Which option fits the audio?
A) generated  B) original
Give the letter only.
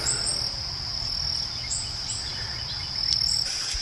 B